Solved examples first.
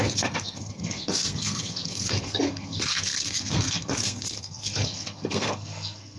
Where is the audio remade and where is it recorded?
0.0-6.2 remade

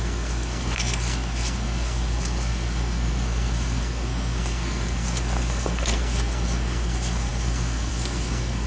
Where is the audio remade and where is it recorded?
0.0-8.7 remade

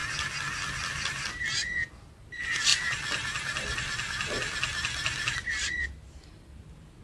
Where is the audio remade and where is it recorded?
0.0-7.0 recorded

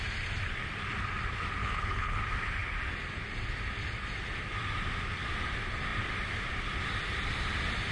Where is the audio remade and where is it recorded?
0.0-1.6 recorded; 1.6-2.2 remade; 2.2-7.9 recorded